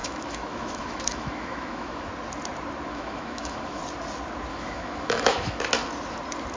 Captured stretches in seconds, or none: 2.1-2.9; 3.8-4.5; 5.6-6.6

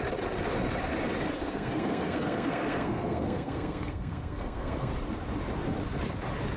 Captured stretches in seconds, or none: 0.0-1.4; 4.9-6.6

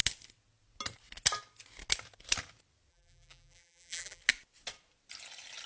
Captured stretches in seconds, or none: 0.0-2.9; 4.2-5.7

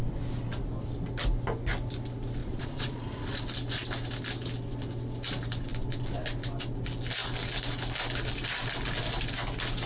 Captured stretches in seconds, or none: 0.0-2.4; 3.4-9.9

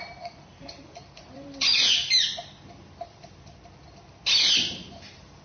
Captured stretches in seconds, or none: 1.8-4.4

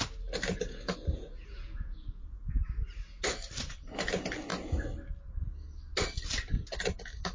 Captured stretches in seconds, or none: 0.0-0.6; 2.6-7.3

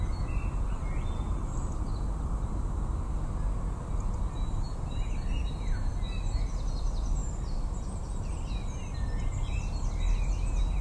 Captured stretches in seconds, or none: 0.0-10.8